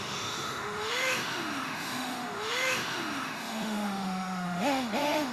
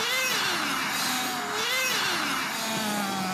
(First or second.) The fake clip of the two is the first